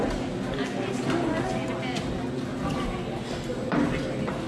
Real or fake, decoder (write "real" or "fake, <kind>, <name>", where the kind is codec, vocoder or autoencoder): real